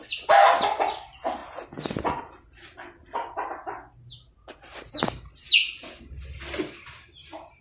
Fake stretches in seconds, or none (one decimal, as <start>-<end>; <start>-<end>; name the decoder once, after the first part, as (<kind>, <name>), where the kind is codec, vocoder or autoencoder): none